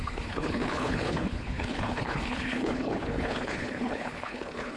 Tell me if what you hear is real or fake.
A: fake